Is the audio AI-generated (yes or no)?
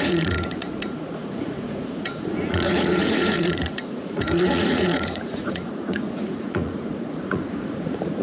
yes